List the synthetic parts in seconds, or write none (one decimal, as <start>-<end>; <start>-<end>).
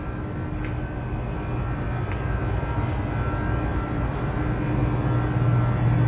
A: none